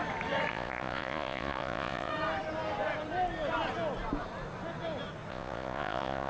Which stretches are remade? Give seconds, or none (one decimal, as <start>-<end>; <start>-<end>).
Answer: 0.5-2.1; 5.3-6.3